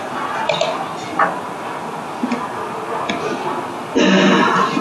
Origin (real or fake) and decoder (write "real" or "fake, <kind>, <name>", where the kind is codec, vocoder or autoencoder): real